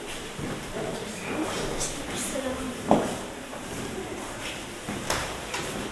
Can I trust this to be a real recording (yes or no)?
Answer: no